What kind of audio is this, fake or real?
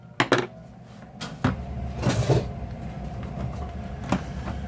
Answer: real